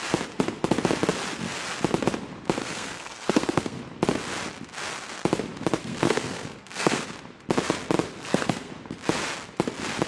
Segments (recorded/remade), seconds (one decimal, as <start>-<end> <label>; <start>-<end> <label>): 0.0-2.6 recorded; 2.6-3.8 remade; 3.8-5.8 recorded; 5.8-7.0 remade; 7.0-8.1 recorded; 8.1-8.7 remade; 8.7-10.1 recorded